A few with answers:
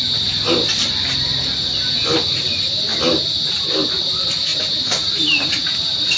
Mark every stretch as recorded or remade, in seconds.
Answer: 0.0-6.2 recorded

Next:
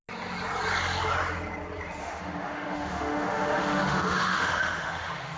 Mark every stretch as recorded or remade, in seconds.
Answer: 0.0-2.0 recorded; 2.0-5.4 remade

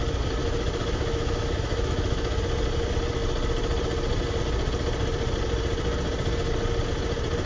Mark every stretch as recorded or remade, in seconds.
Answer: 0.0-0.4 recorded; 0.4-2.4 remade; 2.4-7.5 recorded

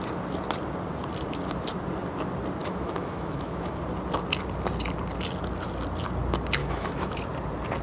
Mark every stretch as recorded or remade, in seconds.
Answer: 0.0-2.6 recorded; 2.6-3.8 remade; 3.8-6.6 recorded; 6.6-7.1 remade; 7.1-7.8 recorded